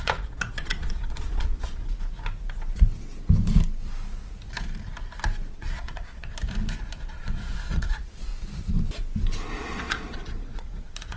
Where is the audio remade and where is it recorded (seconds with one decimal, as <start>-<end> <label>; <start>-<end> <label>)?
0.0-1.8 remade; 1.8-5.5 recorded; 5.5-6.3 remade; 6.3-7.2 recorded; 7.2-8.3 remade; 8.3-9.6 recorded; 9.6-11.2 remade